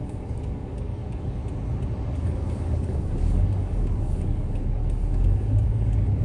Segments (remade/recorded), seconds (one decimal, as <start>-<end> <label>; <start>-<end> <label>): 0.0-1.4 remade; 1.4-2.1 recorded; 2.1-6.2 remade